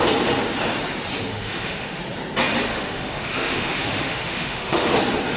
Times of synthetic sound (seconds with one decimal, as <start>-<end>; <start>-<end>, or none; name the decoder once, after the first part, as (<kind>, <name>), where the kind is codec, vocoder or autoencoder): 1.3-2.0 (autoencoder, DAC-VAE); 2.7-4.9

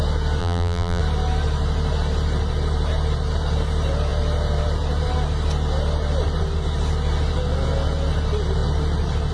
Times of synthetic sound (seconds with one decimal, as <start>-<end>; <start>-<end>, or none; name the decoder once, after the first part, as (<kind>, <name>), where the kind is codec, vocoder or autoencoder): 0.4-1.0 (vocoder, BigVGAN v2)

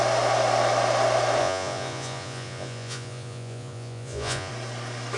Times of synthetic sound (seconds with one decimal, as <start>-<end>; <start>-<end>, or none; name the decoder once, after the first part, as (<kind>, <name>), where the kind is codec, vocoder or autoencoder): 1.4-4.5 (vocoder, Vocos)